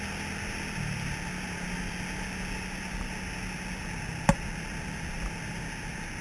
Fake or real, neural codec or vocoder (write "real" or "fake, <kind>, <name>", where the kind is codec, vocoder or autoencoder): real